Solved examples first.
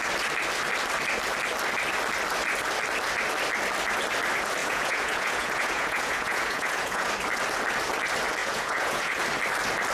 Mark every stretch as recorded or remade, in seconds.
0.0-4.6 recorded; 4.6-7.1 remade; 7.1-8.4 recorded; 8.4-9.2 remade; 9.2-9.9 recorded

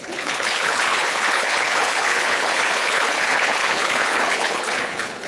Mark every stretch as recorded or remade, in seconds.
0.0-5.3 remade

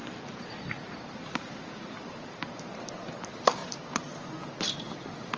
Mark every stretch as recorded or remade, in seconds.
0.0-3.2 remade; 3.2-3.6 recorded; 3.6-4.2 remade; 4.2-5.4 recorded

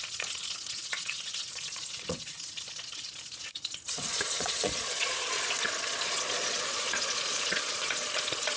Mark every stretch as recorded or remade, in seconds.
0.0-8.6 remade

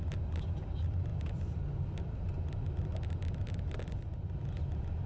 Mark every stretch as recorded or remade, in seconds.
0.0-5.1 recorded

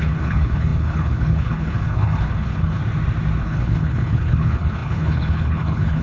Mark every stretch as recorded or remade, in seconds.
0.0-2.8 remade; 2.8-3.4 recorded; 3.4-6.0 remade

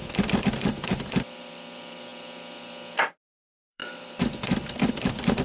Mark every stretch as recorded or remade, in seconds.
0.0-1.1 recorded; 1.1-2.1 remade; 2.1-3.1 recorded; 3.1-3.8 remade; 3.8-4.9 recorded; 4.9-5.4 remade